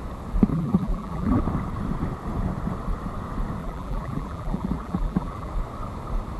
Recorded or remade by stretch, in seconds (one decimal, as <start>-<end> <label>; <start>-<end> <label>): 0.0-0.5 recorded; 0.5-1.4 remade; 1.4-3.6 recorded; 3.6-5.5 remade; 5.5-6.4 recorded